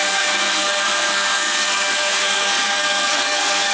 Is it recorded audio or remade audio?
remade